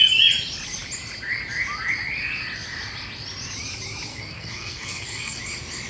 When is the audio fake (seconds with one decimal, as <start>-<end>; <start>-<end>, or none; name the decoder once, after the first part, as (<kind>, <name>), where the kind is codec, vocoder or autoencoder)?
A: 4.1-5.4 (codec, SNAC)